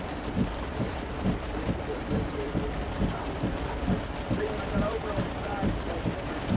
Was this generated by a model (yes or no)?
no